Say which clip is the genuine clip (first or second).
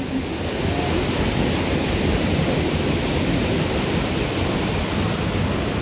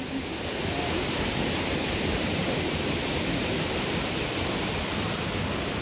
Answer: first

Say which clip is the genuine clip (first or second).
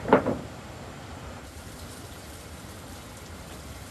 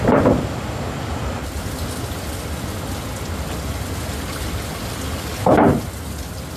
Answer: second